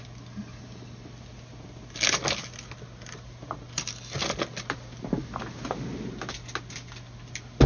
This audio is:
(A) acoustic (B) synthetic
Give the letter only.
A